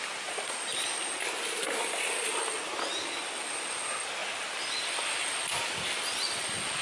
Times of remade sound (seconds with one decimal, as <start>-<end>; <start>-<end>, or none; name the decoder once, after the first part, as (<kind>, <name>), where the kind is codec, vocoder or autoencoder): none